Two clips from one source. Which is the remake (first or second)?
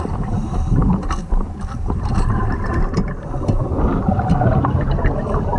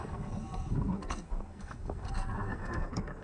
second